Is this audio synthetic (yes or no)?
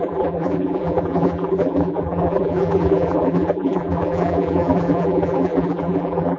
yes